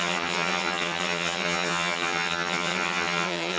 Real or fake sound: fake